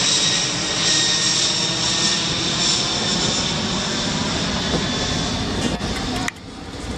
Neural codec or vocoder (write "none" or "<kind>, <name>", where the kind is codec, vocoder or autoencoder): none